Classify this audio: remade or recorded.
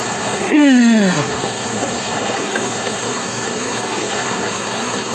remade